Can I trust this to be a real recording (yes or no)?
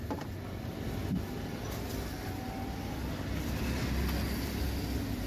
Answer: yes